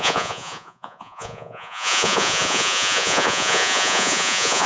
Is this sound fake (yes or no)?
yes